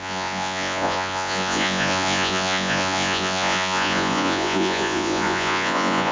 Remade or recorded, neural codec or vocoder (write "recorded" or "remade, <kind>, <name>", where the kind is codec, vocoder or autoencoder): remade, vocoder, Vocos